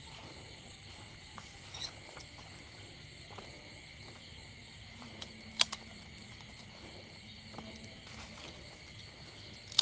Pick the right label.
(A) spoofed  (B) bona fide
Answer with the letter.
B